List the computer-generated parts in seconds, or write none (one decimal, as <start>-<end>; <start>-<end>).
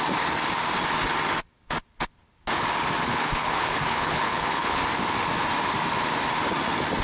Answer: 3.1-4.8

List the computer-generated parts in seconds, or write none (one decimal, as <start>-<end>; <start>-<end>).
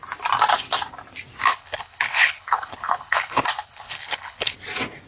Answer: 1.5-4.5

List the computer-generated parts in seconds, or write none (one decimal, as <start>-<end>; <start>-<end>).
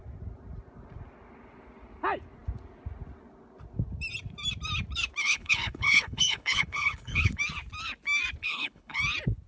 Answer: 5.2-7.4; 8.4-9.0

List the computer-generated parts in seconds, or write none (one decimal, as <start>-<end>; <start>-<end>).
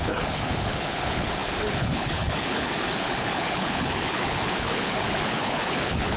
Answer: 0.0-6.2